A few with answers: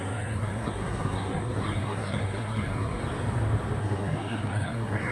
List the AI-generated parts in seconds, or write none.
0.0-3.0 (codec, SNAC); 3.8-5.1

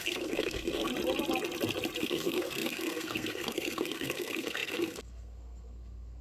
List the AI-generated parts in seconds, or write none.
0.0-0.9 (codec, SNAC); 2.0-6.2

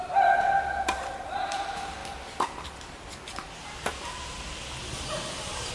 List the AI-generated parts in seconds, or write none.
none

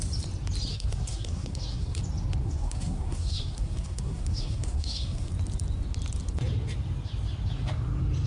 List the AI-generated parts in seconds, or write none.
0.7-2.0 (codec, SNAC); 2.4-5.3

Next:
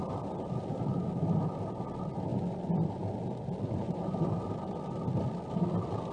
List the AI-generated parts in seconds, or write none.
none